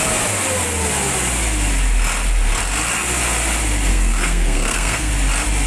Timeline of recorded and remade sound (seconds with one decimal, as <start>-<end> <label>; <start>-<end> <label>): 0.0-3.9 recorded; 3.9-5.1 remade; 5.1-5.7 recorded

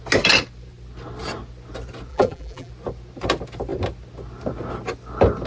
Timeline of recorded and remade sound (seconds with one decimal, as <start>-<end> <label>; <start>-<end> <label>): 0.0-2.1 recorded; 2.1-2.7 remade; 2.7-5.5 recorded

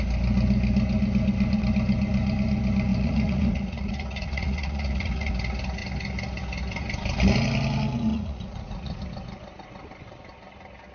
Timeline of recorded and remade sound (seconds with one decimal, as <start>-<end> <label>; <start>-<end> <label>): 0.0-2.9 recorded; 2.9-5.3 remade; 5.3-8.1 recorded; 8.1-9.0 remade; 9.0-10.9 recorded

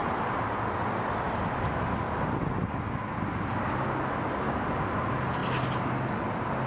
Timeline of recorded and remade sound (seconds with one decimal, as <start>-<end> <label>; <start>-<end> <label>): 0.0-6.7 recorded

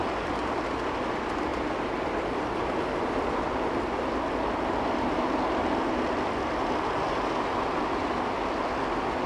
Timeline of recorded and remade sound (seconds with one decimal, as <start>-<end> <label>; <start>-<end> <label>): 0.0-1.5 recorded; 1.5-3.2 remade; 3.2-9.3 recorded